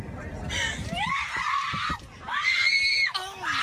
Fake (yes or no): no